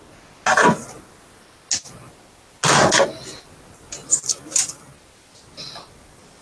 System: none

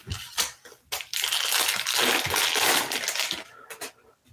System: none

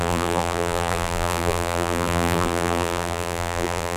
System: vocoder, BigVGAN v2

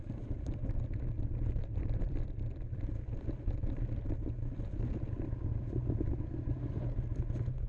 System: none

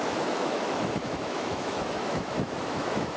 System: autoencoder, DAC-VAE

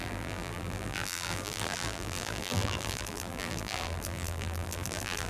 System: vocoder, BigVGAN v2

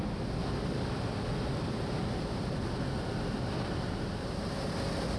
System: none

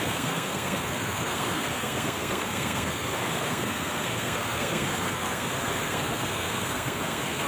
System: codec, SNAC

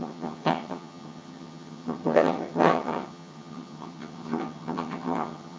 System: vocoder, HiFi-GAN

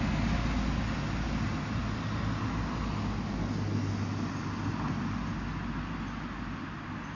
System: none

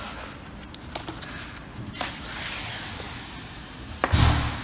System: none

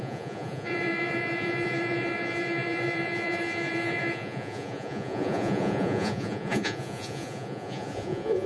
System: vocoder, Vocos